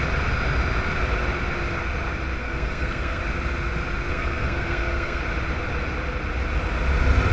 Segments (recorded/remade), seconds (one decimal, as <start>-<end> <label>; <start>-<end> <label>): 0.0-2.4 recorded; 2.4-3.2 remade; 3.2-4.1 recorded; 4.1-5.2 remade; 5.2-7.3 recorded